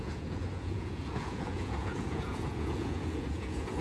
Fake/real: fake